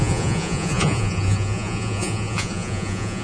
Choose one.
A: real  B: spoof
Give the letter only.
B